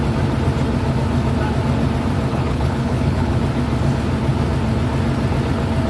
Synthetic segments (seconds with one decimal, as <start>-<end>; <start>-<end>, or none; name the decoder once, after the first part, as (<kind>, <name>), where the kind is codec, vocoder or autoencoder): 2.3-3.4 (codec, HILCodec)